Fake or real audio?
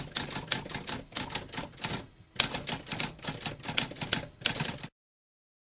real